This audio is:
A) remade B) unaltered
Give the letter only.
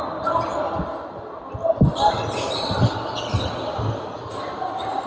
B